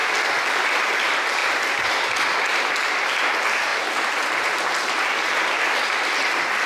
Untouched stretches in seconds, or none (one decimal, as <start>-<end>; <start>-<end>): 0.0-1.4; 1.9-6.7